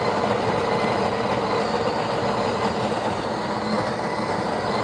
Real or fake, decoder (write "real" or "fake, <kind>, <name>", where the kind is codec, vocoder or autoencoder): real